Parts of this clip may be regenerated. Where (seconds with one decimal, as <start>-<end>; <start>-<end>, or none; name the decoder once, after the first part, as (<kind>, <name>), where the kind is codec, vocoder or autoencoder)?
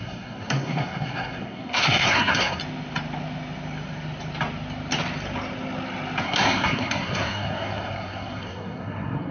0.0-2.6 (codec, SNAC); 6.2-9.3